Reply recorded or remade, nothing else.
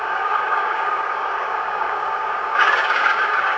remade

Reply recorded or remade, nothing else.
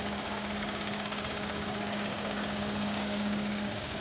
remade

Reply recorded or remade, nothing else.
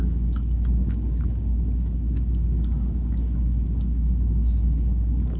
remade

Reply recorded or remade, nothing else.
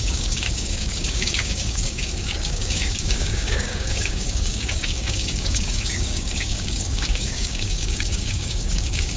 remade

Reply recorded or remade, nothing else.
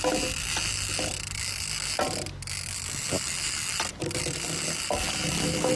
recorded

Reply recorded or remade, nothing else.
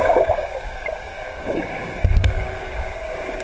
remade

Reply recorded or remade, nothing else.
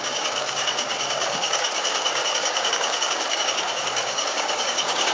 remade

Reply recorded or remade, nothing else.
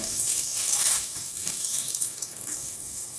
remade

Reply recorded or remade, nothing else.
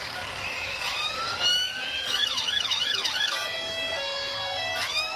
remade